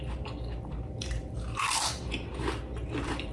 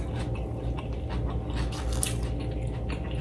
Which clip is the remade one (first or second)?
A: first